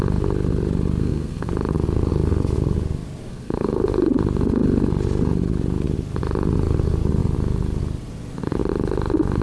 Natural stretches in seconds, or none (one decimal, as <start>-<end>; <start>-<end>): 0.0-1.0; 1.5-3.3; 3.8-9.4